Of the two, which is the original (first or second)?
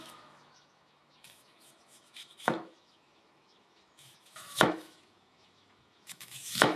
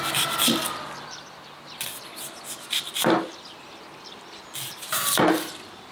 second